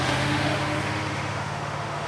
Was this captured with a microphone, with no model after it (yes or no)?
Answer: no